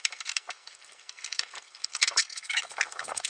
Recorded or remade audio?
remade